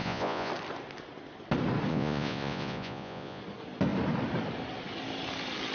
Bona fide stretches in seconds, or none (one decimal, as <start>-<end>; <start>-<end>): 0.5-1.9; 3.4-5.7